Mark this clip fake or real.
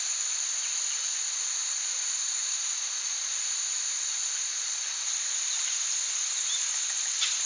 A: real